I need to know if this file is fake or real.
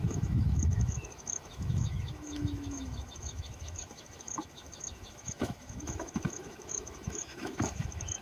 fake